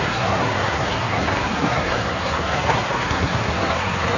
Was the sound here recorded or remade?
remade